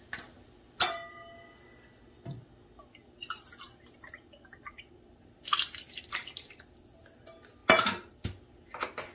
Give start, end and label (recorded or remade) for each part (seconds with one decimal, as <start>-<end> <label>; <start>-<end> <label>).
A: 0.0-9.1 recorded